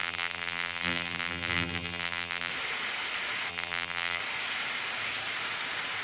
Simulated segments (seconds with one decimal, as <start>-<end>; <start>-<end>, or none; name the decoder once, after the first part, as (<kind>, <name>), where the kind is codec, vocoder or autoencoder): 0.0-2.5 (vocoder, BigVGAN v2); 3.5-4.2